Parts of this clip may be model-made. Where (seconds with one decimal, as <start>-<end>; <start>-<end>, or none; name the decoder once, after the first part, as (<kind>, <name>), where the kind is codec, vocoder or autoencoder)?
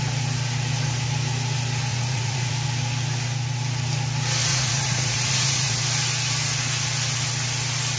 1.9-2.5 (vocoder, Vocos); 4.5-5.7